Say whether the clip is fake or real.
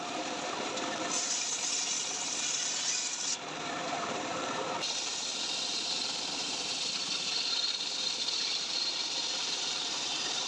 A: fake